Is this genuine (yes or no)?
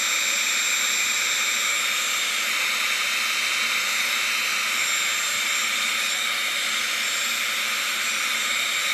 yes